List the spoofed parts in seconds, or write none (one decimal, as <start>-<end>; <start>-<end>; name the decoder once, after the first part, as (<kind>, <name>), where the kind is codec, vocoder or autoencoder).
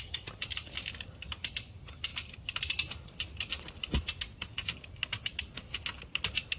none